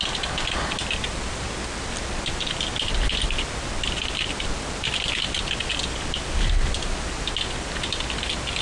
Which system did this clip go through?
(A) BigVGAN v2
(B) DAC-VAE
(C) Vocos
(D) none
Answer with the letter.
D